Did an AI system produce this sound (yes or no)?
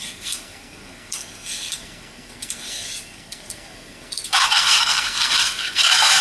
yes